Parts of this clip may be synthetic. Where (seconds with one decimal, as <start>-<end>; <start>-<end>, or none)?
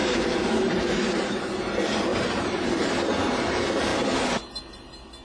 0.0-1.4; 2.1-2.9